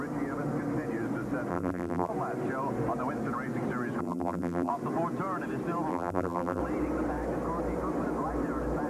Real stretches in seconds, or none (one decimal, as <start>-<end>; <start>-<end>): 0.0-1.5; 2.1-4.0; 4.7-5.9; 6.6-8.9